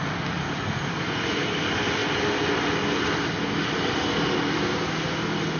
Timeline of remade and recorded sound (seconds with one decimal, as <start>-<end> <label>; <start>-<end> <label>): 0.0-5.6 recorded